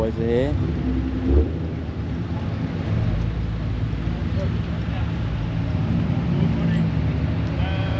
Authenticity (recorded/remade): recorded